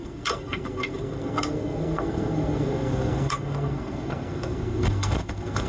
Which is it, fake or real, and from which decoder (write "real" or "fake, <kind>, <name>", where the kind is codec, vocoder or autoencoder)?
fake, codec, SNAC